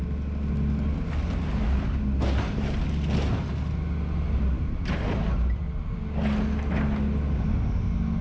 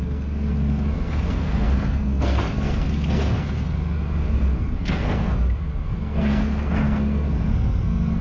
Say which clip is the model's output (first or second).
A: second